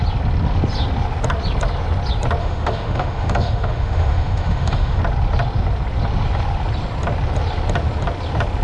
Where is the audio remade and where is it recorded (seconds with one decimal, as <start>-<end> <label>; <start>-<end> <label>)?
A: 0.0-2.4 recorded; 2.4-5.0 remade; 5.0-8.6 recorded

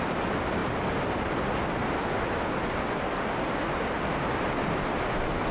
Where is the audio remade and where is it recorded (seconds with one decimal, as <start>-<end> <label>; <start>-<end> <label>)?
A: 0.0-5.5 recorded

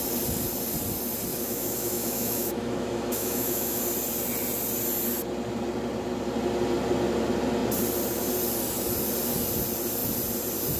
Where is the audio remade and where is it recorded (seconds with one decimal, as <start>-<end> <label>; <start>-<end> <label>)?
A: 0.0-1.3 recorded; 1.3-3.8 remade; 3.8-10.8 recorded

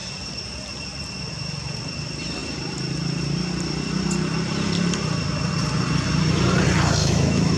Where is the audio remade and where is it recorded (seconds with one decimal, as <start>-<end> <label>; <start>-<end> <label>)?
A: 0.0-7.0 recorded; 7.0-7.6 remade

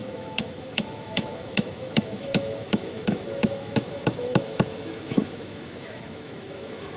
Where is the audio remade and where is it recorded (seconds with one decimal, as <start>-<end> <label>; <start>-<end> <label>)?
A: 0.0-7.0 remade

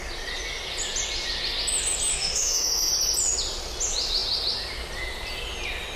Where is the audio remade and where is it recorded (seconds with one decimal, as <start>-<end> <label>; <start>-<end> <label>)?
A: 0.0-2.1 recorded; 2.1-2.9 remade; 2.9-6.0 recorded

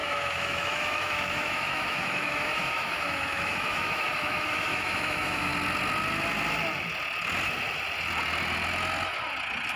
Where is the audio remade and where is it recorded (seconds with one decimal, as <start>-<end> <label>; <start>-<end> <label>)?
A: 0.0-5.5 remade; 5.5-9.8 recorded

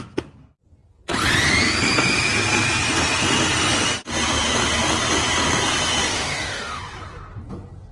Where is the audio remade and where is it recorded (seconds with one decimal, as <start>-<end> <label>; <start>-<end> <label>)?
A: 0.0-6.1 recorded; 6.1-6.8 remade; 6.8-7.9 recorded